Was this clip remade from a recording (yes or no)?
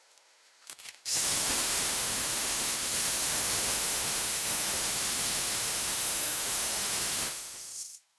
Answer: yes